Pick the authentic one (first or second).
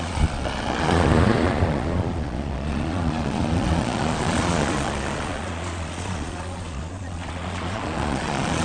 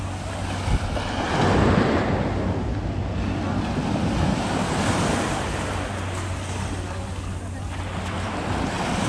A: second